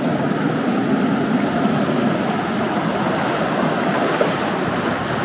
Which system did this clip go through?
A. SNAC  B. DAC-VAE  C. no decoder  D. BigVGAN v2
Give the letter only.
C